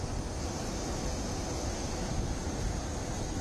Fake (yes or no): no